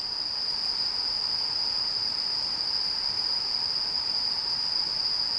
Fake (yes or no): no